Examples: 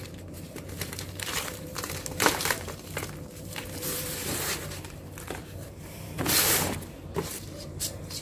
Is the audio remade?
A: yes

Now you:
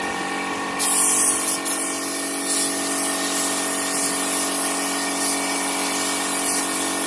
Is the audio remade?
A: no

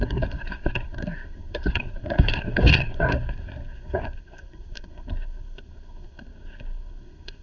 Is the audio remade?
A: yes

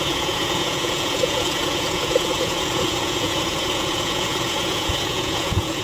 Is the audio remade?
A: yes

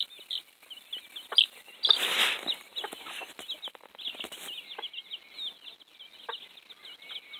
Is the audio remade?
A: no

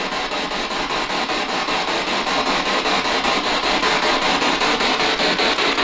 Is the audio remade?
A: no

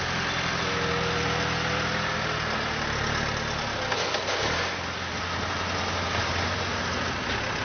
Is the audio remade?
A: no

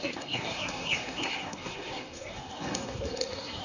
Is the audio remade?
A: yes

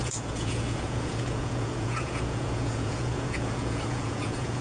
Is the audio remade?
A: yes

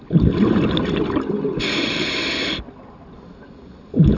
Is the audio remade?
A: no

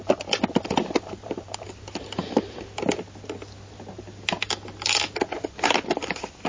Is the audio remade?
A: no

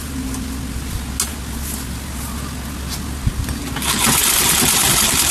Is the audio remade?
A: no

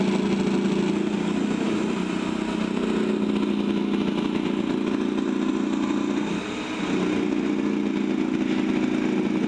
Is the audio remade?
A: no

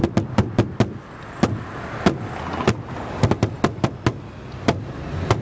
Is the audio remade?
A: no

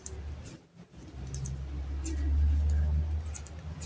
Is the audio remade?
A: no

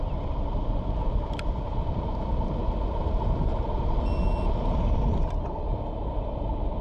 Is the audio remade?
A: no